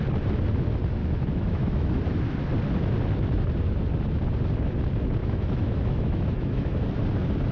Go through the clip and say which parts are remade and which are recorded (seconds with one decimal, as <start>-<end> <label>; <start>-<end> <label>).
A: 0.0-1.0 recorded; 1.0-2.0 remade; 2.0-5.2 recorded; 5.2-6.7 remade; 6.7-7.5 recorded

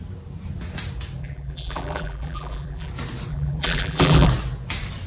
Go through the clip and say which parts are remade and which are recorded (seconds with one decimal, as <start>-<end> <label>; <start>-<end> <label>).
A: 0.0-1.2 recorded; 1.2-2.9 remade; 2.9-3.3 recorded; 3.3-4.3 remade; 4.3-5.1 recorded

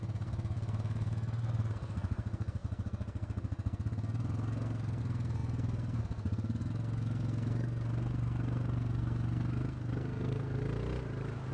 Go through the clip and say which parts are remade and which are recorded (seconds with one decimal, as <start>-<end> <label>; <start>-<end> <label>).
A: 0.0-10.6 remade; 10.6-11.5 recorded

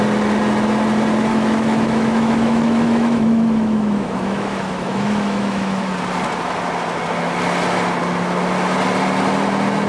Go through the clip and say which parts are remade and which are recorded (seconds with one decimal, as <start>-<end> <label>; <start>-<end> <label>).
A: 0.0-1.3 recorded; 1.3-5.9 remade; 5.9-9.9 recorded

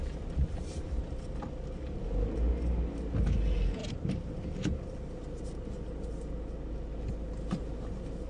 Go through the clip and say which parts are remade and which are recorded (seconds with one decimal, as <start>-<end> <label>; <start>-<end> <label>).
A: 0.0-3.8 recorded; 3.8-5.0 remade; 5.0-8.3 recorded

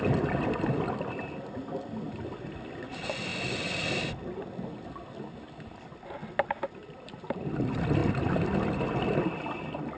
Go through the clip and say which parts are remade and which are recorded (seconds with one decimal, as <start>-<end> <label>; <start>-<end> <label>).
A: 0.0-6.8 recorded; 6.8-7.6 remade; 7.6-10.0 recorded

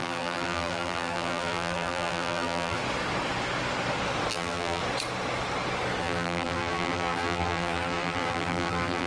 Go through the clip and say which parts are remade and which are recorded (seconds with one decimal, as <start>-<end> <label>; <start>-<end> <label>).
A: 0.0-2.8 remade; 2.8-4.3 recorded; 4.3-4.8 remade; 4.8-6.0 recorded; 6.0-9.1 remade

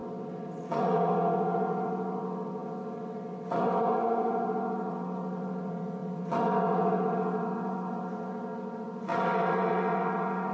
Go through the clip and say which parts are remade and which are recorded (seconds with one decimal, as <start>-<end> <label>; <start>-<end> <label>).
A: 0.0-10.5 remade